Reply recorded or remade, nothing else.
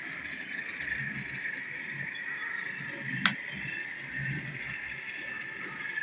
recorded